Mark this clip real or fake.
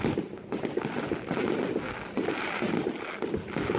real